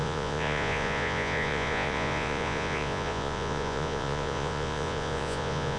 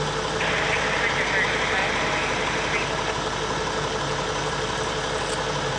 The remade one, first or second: first